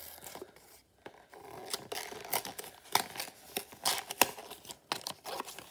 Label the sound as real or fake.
real